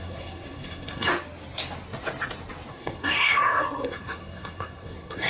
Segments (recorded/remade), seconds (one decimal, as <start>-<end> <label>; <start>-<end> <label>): 0.0-1.1 remade; 1.1-2.7 recorded; 2.7-5.3 remade